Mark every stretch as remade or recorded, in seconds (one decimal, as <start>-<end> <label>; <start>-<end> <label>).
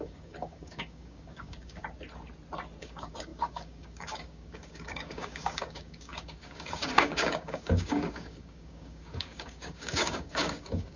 0.0-1.8 remade; 1.8-2.8 recorded; 2.8-11.0 remade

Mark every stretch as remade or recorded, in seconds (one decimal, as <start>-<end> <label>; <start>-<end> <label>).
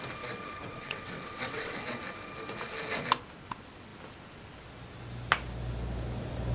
0.0-0.6 recorded; 0.6-1.8 remade; 1.8-6.5 recorded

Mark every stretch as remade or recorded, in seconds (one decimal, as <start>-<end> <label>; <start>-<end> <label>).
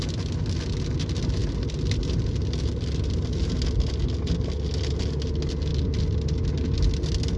0.0-7.4 recorded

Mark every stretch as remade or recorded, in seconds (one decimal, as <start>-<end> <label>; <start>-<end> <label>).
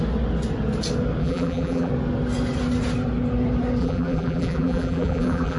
0.0-1.2 recorded; 1.2-1.9 remade; 1.9-3.8 recorded; 3.8-5.6 remade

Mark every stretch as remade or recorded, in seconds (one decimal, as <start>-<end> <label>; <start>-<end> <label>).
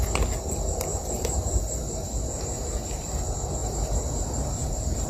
0.0-0.9 recorded; 0.9-2.4 remade; 2.4-3.6 recorded; 3.6-5.1 remade